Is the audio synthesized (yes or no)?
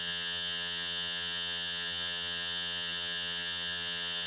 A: yes